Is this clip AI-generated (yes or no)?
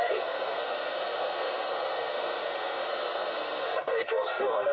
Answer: yes